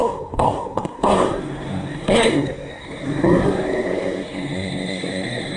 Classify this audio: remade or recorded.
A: remade